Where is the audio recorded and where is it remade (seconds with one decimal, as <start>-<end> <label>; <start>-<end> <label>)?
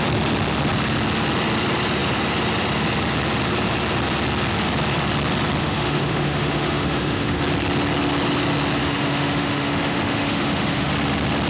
0.0-5.6 recorded; 5.6-7.4 remade; 7.4-8.8 recorded; 8.8-10.9 remade; 10.9-11.5 recorded